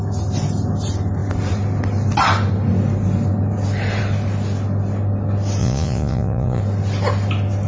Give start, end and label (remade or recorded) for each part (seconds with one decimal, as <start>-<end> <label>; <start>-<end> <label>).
0.0-5.6 recorded; 5.6-6.6 remade; 6.6-7.7 recorded